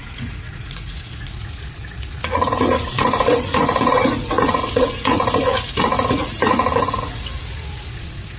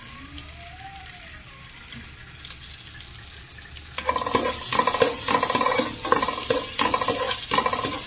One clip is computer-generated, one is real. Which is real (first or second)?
second